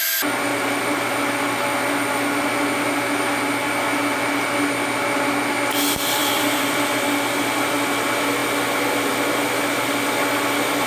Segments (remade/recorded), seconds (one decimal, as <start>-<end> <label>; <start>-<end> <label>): 0.0-0.5 recorded; 0.5-1.1 remade; 1.1-6.2 recorded; 6.2-6.9 remade; 6.9-10.9 recorded